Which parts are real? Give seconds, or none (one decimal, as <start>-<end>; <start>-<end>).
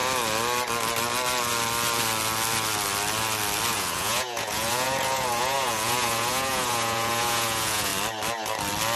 0.0-3.7; 7.9-9.0